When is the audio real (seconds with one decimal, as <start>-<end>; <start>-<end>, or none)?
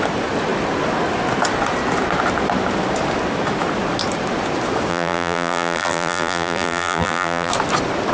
0.0-4.9; 7.5-8.1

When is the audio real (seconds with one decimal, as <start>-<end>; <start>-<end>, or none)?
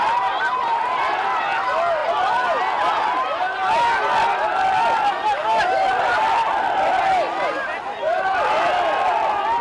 0.0-9.6